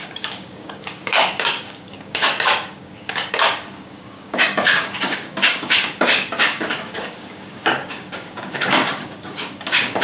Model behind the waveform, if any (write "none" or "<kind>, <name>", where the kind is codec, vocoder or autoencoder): codec, DAC